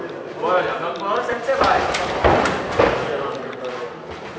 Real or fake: real